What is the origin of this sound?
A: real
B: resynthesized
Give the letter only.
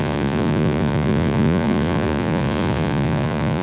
B